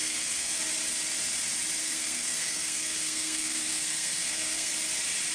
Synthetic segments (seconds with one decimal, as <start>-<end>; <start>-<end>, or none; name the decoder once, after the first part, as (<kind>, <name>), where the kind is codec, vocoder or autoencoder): 0.0-0.6 (codec, SNAC); 1.8-4.7